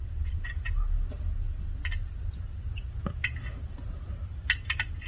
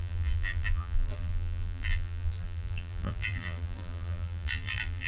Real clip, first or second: first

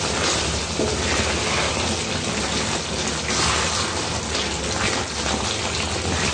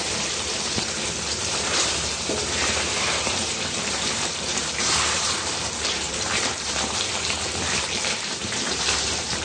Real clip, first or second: first